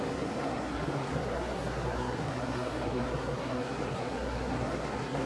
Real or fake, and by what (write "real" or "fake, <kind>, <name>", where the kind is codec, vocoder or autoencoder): fake, codec, SNAC